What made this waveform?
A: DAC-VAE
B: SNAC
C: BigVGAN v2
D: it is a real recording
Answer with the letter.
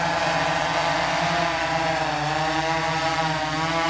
D